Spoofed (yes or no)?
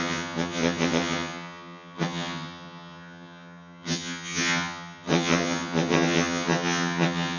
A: yes